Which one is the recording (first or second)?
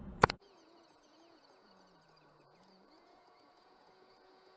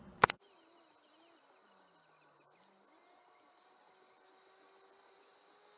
second